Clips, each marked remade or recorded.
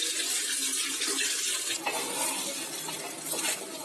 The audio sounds recorded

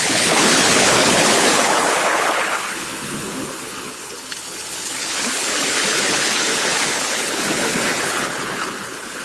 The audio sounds remade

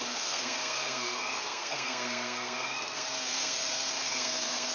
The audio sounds remade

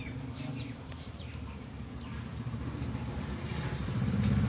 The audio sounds remade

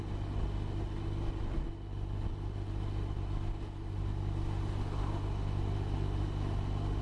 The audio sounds recorded